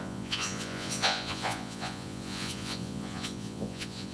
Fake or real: fake